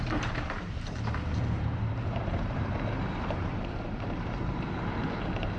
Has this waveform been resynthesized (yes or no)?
yes